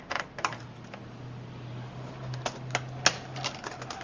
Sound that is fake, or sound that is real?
real